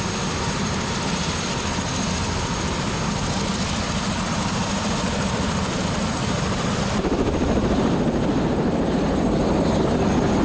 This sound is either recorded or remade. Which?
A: recorded